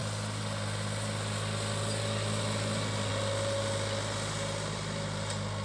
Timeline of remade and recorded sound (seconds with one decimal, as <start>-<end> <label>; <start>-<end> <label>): 0.0-5.6 recorded